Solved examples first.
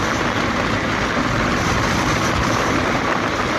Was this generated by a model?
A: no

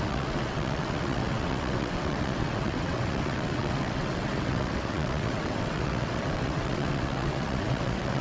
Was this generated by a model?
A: yes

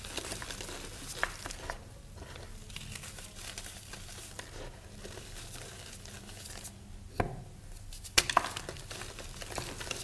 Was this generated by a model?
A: no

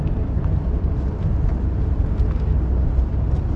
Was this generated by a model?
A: no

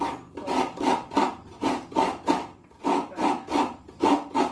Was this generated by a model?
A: no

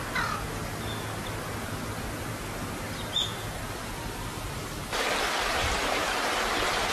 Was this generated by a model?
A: no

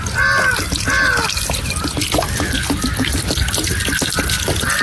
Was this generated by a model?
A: no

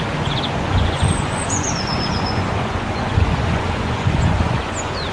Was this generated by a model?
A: yes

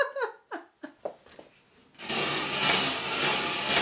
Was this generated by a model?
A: no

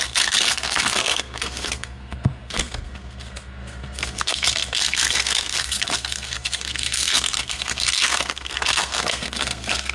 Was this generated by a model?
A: yes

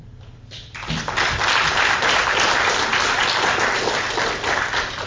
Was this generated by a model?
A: no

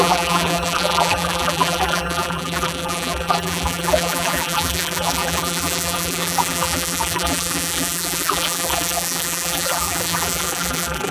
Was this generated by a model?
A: yes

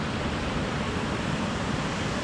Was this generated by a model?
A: yes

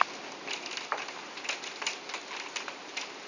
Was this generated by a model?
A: no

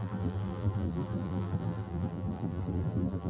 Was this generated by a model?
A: yes